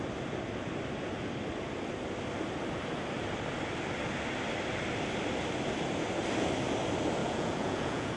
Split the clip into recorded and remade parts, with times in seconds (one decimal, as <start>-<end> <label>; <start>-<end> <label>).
0.0-7.2 recorded; 7.2-8.2 remade